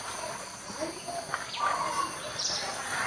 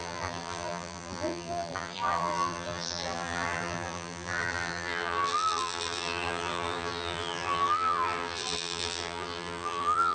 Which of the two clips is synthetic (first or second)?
second